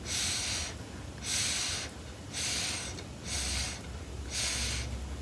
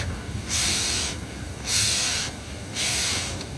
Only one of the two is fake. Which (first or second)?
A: second